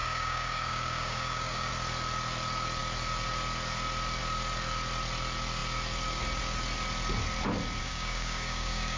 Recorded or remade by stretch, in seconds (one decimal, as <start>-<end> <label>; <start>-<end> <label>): 0.0-1.7 remade; 1.7-7.8 recorded; 7.8-9.0 remade